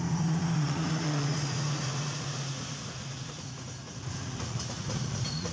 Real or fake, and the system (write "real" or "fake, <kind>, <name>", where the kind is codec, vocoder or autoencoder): fake, vocoder, Vocos